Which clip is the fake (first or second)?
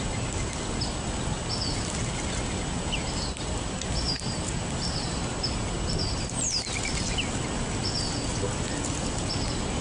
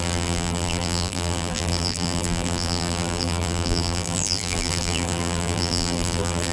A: second